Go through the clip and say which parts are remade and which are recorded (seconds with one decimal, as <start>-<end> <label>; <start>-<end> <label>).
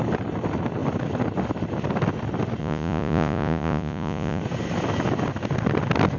0.0-2.6 recorded; 2.6-4.4 remade; 4.4-6.2 recorded